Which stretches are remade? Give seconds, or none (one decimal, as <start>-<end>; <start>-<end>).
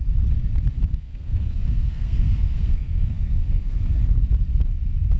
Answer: 0.9-4.0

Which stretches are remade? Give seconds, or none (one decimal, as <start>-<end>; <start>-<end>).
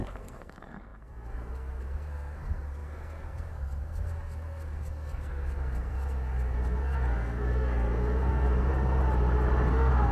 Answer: 0.0-8.7; 9.7-10.1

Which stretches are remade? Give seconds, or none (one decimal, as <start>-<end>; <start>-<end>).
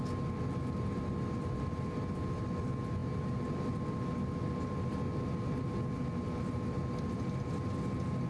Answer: none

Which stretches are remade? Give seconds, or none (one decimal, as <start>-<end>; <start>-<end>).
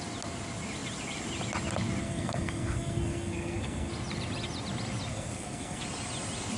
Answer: 2.0-3.9; 5.1-5.8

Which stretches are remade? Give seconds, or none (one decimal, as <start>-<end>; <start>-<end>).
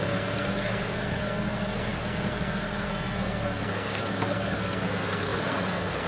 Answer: 0.0-6.1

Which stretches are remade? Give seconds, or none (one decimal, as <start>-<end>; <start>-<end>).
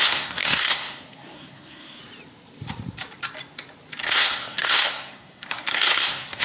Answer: 0.0-2.0; 4.0-6.4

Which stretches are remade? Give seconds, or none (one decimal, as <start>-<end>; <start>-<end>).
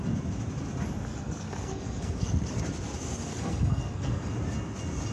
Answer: 1.1-2.6; 3.3-4.3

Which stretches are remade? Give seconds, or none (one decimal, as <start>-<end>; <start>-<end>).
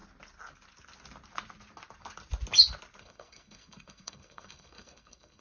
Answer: 3.0-5.4